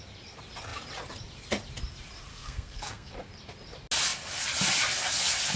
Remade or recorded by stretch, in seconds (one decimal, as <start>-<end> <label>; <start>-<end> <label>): 0.0-2.3 recorded; 2.3-3.1 remade; 3.1-5.6 recorded